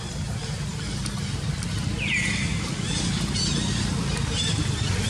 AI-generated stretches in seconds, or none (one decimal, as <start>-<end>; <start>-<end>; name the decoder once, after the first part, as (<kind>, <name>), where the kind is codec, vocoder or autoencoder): none

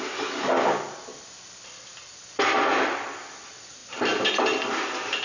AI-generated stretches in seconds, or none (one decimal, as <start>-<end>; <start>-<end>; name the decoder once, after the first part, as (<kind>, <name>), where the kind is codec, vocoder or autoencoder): none

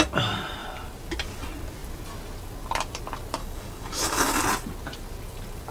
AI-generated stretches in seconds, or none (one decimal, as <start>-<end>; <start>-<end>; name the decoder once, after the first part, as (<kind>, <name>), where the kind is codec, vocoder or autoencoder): 3.4-4.4 (codec, DAC)